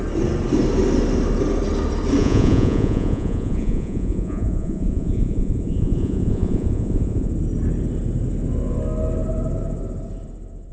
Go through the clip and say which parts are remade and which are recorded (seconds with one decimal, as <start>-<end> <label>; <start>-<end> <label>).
0.0-2.2 recorded; 2.2-7.3 remade; 7.3-10.7 recorded